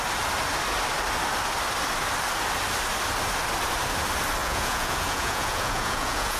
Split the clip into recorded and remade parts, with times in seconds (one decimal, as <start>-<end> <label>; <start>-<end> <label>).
0.0-4.4 recorded; 4.4-6.4 remade